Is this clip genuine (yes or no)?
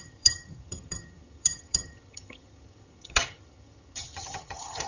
no